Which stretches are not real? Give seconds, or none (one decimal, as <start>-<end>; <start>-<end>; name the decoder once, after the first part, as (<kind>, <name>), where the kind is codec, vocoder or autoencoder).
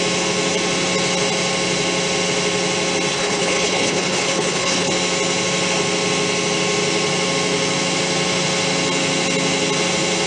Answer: 3.1-4.9 (codec, HILCodec)